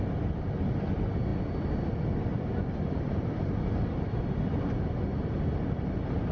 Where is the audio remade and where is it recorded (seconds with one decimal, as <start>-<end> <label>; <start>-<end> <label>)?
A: 0.0-2.3 recorded; 2.3-3.5 remade; 3.5-6.3 recorded